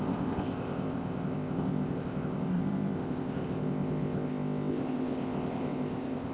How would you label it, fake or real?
fake